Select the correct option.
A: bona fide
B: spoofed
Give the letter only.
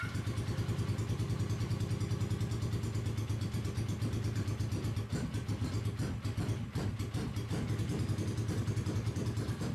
A